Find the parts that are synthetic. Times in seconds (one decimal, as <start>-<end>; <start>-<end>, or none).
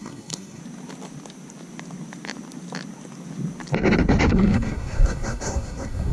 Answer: 0.0-0.6; 4.2-6.1